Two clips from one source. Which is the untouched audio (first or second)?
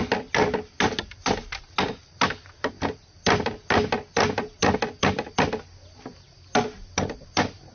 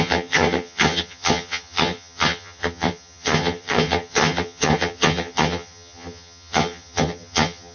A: first